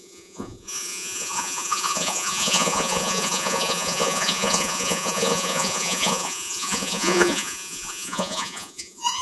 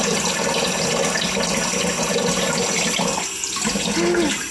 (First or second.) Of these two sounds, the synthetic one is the first